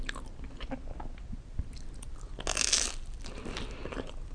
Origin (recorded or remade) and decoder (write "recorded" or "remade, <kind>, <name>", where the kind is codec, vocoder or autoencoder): recorded